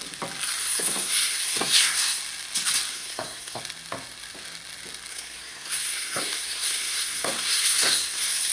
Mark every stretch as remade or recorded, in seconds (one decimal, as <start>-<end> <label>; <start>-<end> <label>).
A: 0.0-0.6 recorded; 0.6-2.2 remade; 2.2-2.9 recorded; 2.9-3.6 remade; 3.6-5.1 recorded; 5.1-8.5 remade